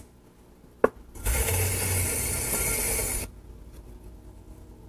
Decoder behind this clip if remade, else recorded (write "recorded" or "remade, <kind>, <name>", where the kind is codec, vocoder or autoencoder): recorded